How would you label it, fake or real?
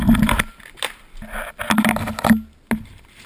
real